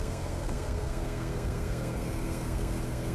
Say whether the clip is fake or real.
fake